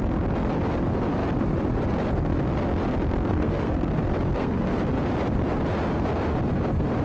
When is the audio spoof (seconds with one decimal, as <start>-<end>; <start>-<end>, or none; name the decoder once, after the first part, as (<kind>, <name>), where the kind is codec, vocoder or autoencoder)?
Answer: 3.3-3.9 (codec, SNAC); 4.3-4.8